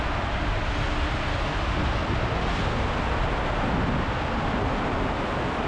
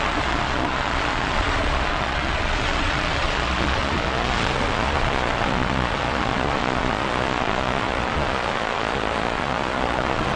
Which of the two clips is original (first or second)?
first